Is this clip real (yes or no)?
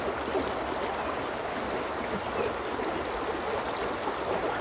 yes